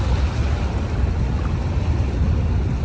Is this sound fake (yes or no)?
no